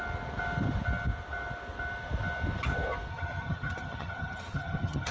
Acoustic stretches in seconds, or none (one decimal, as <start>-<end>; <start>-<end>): 0.0-3.1